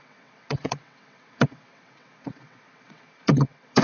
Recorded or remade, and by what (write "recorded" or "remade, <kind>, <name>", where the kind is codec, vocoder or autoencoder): remade, vocoder, WaveNeXt